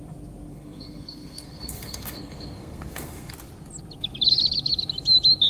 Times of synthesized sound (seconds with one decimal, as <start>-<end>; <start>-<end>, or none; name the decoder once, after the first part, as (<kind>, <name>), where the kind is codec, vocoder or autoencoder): 0.5-3.3 (codec, SNAC)